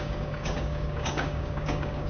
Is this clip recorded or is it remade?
remade